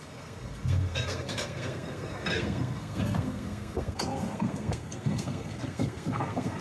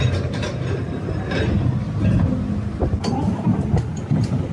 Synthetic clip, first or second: first